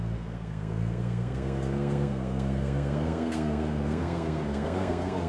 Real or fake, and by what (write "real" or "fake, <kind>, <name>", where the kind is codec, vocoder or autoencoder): fake, codec, SNAC